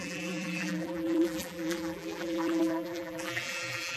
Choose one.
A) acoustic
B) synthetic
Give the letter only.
B